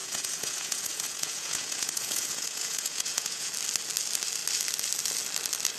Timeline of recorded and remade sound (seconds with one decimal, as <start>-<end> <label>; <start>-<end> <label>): 0.0-3.5 remade; 3.5-5.8 recorded